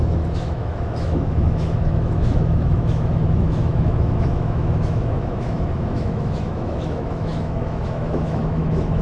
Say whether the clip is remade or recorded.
remade